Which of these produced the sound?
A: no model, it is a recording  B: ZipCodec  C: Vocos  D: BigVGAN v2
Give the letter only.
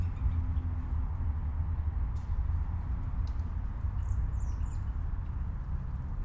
A